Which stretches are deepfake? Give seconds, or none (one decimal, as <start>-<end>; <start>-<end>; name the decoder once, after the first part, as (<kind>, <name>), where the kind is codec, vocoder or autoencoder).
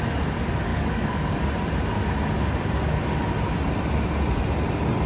0.7-1.4 (codec, DAC)